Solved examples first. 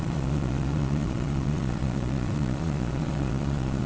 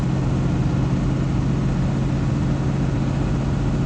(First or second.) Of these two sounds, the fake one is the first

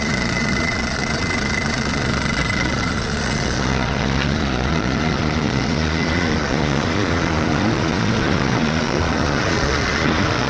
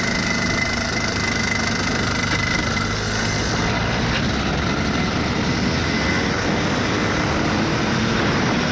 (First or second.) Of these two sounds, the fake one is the first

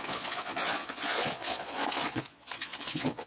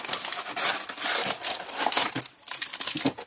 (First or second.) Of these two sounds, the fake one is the first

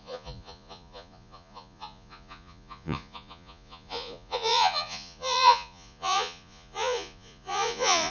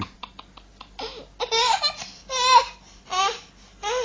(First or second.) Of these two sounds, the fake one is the first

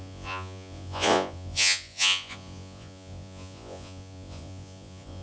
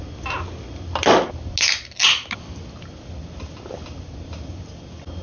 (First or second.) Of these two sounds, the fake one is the first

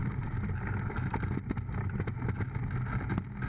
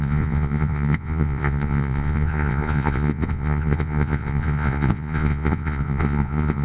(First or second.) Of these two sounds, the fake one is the second